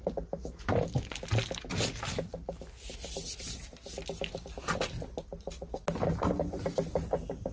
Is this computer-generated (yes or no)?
no